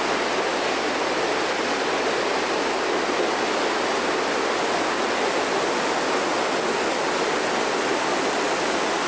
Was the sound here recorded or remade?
recorded